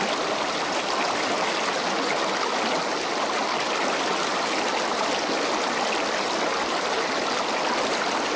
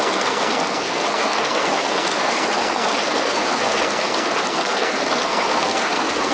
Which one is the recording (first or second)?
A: first